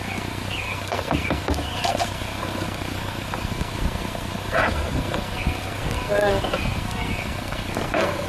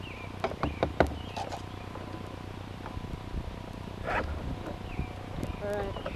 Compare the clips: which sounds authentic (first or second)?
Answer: second